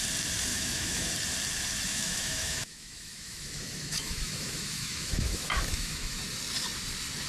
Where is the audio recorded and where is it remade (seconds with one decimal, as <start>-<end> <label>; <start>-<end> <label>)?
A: 0.0-0.5 recorded; 0.5-1.1 remade; 1.1-1.9 recorded; 1.9-6.2 remade; 6.2-7.3 recorded